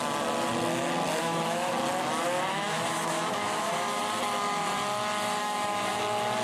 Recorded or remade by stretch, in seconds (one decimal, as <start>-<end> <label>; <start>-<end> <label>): 0.0-1.2 recorded; 1.2-1.7 remade; 1.7-2.5 recorded; 2.5-4.0 remade; 4.0-5.4 recorded; 5.4-6.0 remade; 6.0-6.4 recorded